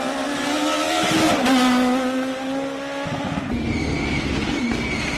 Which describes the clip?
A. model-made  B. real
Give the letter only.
B